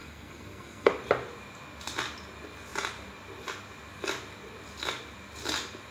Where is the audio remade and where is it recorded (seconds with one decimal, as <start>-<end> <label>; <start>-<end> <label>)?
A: 0.0-0.9 remade; 0.9-5.9 recorded